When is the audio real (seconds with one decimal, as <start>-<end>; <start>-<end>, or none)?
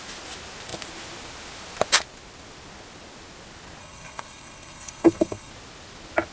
0.0-3.8; 5.5-6.3